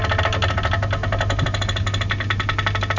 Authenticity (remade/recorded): recorded